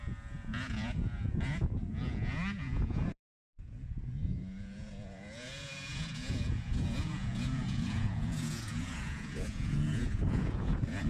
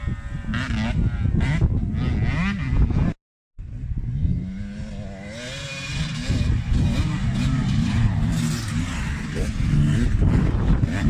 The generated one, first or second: first